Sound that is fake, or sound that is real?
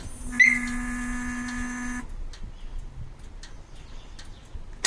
real